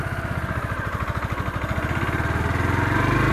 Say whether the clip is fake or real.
real